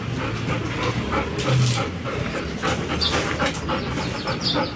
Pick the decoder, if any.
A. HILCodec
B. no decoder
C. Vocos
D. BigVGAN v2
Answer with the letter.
B